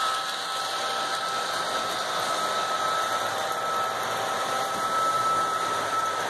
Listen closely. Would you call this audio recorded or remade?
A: recorded